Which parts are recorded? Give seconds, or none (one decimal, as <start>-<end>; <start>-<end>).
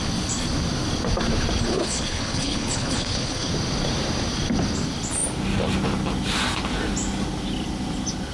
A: 0.0-1.7; 3.5-8.3